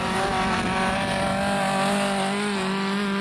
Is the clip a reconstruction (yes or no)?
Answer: no